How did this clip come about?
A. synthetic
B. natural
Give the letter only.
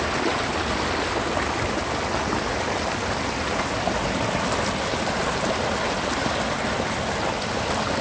B